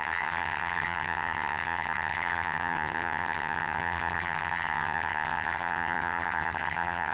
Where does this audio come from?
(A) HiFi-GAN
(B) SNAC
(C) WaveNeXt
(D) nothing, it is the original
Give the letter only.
A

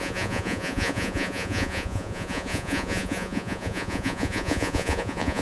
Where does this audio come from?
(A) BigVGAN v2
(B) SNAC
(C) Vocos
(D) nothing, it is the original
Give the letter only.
C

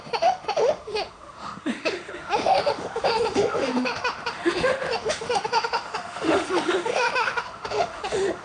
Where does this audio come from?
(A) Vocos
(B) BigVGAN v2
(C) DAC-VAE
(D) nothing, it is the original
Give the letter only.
C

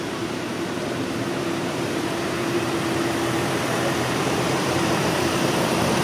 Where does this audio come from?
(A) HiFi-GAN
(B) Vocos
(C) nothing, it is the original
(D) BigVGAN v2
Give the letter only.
D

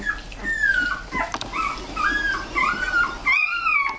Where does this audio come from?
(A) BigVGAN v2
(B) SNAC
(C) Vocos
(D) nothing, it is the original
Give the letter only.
D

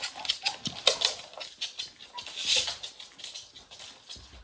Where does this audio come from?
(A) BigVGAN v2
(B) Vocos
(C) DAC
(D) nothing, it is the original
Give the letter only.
D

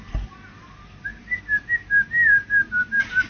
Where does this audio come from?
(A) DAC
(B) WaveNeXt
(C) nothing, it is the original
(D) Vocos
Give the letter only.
C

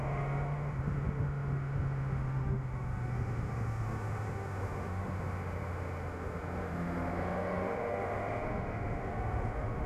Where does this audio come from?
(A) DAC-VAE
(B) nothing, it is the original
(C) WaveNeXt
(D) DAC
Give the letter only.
A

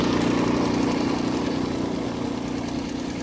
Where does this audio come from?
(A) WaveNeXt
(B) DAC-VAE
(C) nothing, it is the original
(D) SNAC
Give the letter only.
C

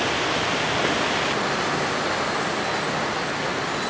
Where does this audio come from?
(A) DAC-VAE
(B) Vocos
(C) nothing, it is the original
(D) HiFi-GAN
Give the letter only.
C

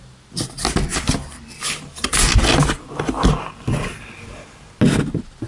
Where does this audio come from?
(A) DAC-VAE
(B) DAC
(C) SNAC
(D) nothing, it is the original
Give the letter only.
D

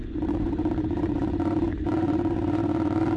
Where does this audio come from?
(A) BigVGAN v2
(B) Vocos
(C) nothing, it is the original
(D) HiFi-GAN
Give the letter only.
B